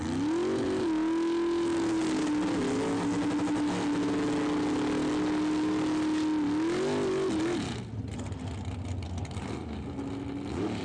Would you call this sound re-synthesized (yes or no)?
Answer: no